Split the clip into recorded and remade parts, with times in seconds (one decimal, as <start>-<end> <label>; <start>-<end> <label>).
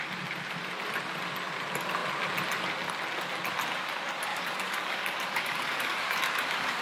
0.0-4.3 recorded; 4.3-6.8 remade